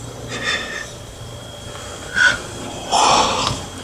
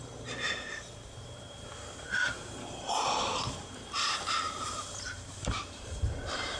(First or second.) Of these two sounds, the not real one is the second